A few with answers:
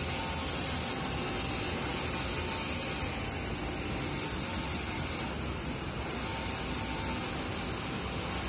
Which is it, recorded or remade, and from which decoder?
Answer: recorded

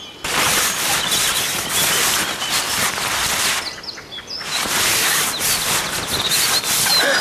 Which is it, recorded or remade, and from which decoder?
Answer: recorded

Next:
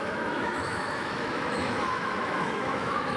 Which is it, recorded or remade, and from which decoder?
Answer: remade, autoencoder, DAC-VAE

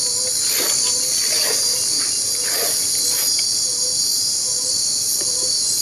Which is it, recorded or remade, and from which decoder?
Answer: recorded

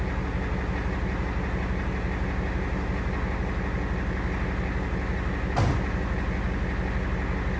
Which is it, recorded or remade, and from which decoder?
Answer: recorded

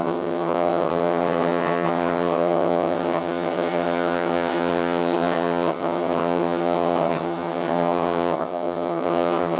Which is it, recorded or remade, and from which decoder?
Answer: remade, vocoder, HiFi-GAN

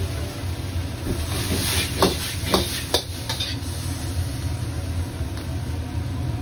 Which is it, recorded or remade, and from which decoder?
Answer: recorded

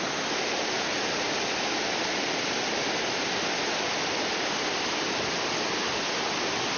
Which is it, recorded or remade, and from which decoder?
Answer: recorded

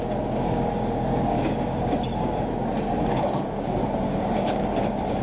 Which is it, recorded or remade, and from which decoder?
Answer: remade, codec, DAC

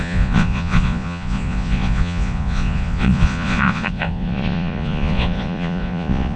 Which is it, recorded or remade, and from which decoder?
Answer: remade, vocoder, Vocos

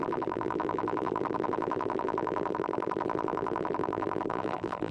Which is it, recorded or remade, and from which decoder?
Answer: remade, vocoder, BigVGAN v2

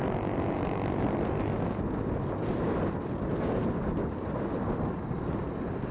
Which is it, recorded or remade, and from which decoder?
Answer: recorded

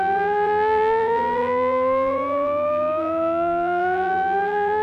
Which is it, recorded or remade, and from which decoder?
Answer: remade, vocoder, BigVGAN v2